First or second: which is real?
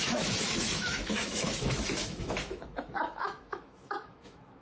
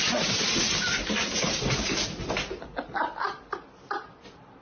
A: second